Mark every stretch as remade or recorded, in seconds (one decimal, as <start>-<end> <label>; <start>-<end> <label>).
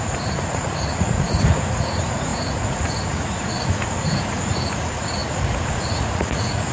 0.0-6.7 remade